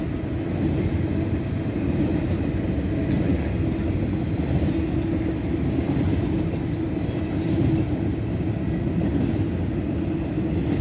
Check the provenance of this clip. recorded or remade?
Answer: recorded